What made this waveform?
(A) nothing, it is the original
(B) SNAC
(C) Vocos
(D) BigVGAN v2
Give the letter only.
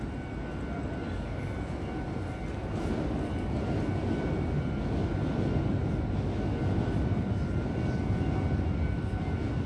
A